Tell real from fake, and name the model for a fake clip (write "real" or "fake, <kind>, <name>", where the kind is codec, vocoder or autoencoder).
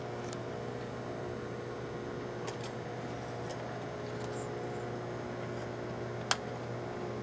real